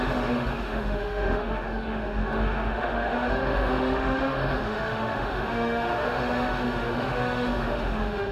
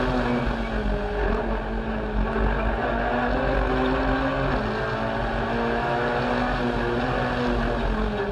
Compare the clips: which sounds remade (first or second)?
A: first